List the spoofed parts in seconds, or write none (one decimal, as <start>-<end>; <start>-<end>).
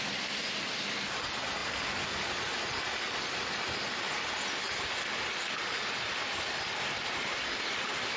none